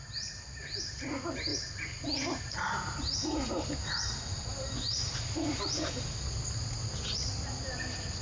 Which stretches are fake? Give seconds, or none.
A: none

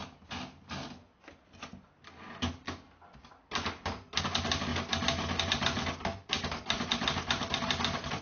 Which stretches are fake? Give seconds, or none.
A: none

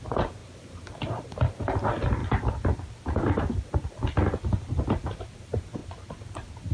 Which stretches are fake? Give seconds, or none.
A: none